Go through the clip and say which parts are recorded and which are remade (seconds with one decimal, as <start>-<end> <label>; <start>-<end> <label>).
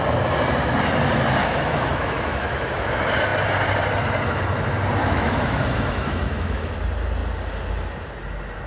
0.0-1.4 recorded; 1.4-2.9 remade; 2.9-5.0 recorded; 5.0-6.7 remade; 6.7-8.7 recorded